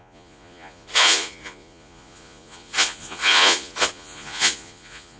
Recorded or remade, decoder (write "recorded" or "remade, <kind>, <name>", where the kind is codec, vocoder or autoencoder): remade, vocoder, Vocos